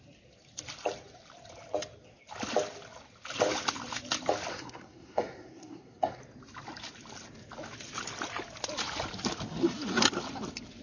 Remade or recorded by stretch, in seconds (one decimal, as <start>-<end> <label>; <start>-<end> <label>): 0.0-4.5 recorded; 4.5-6.2 remade; 6.2-10.8 recorded